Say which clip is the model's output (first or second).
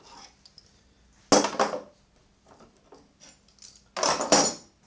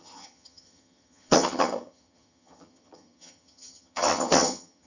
second